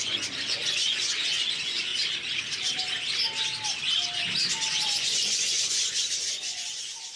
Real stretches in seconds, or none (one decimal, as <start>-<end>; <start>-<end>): 1.9-4.8